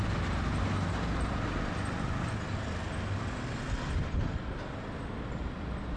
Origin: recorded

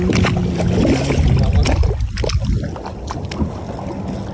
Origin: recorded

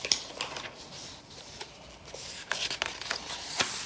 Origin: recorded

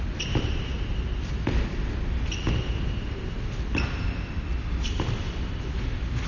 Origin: recorded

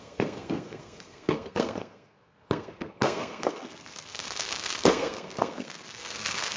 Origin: remade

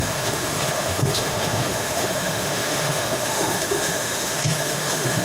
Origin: remade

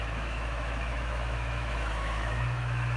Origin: remade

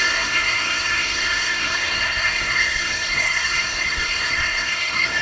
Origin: remade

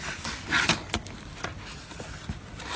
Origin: recorded